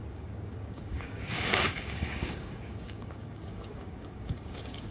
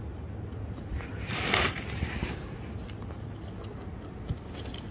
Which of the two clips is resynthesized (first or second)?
first